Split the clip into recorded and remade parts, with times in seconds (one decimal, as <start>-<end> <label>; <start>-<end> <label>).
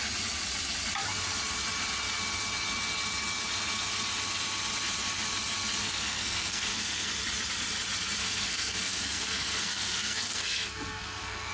0.0-5.8 recorded; 5.8-7.1 remade; 7.1-8.2 recorded; 8.2-11.5 remade